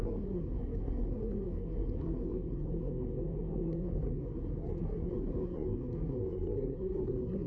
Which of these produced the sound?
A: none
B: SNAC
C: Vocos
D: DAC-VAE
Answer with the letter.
B